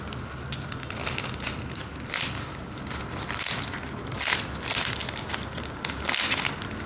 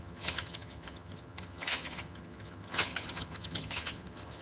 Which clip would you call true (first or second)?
first